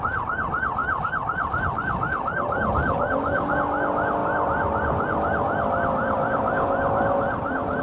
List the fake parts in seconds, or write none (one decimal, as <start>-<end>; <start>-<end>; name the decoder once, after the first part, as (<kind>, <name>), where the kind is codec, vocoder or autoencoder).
0.8-3.5 (vocoder, BigVGAN v2); 4.2-7.8